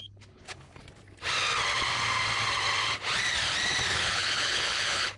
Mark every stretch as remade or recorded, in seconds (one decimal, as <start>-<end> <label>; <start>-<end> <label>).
0.0-0.8 remade; 0.8-3.9 recorded; 3.9-5.2 remade